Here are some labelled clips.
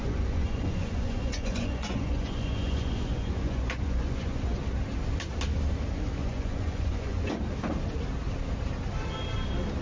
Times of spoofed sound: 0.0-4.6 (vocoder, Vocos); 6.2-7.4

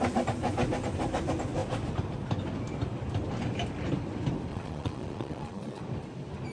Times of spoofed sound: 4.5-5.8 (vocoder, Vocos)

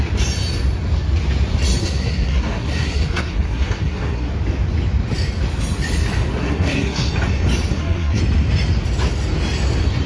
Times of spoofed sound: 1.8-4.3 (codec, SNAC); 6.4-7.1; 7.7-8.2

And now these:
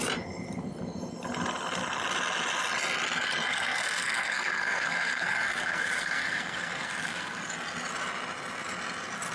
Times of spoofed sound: 3.5-7.4 (codec, SNAC)

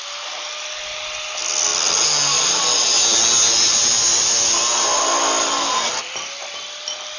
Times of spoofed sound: none

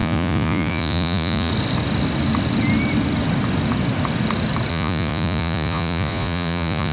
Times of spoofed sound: 0.0-1.5 (vocoder, Vocos); 4.7-6.9